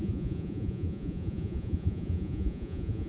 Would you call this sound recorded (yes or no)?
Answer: no